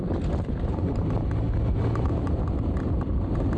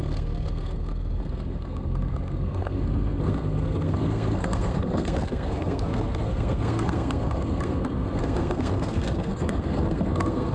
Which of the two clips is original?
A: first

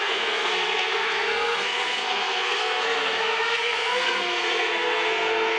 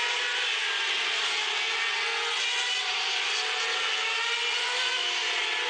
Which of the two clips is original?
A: second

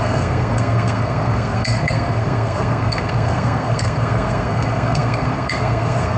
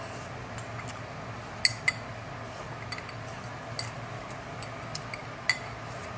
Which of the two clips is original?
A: second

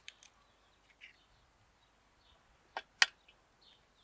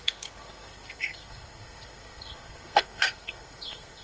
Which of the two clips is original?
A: first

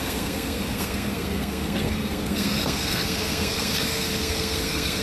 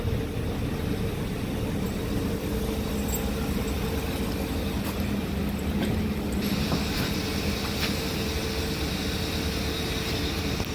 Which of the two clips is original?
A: second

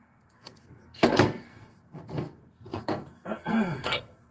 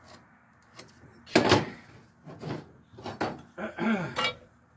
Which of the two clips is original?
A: second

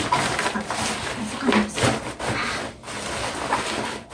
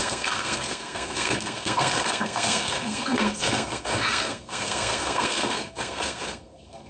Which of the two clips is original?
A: first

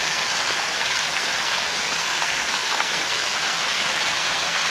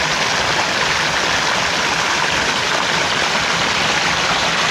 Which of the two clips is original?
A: second